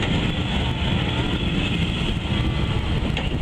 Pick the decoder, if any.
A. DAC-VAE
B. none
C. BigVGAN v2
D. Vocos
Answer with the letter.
B